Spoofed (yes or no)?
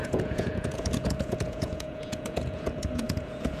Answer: yes